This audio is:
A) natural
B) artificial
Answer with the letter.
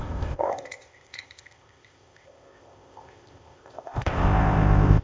B